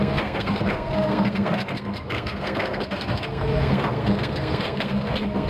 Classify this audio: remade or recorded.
remade